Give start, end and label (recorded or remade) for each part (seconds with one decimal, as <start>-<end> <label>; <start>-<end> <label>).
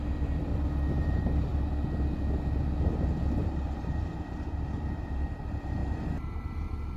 0.0-0.5 remade; 0.5-1.0 recorded; 1.0-1.5 remade; 1.5-3.4 recorded; 3.4-7.0 remade